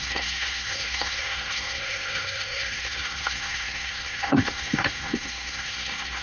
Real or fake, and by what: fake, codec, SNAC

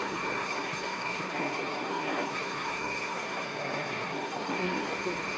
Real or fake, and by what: fake, codec, SNAC